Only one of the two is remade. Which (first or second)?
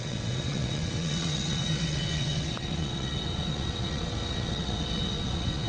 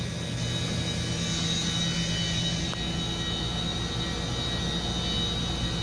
first